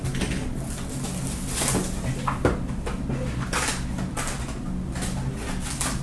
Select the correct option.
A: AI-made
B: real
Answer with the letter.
B